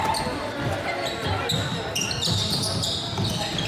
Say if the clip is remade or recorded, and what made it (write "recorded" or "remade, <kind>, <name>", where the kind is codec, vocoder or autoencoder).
recorded